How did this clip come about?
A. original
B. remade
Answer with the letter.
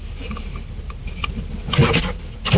A